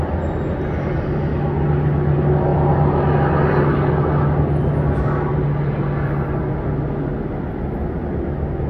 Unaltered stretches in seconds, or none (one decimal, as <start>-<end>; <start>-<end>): 0.0-8.7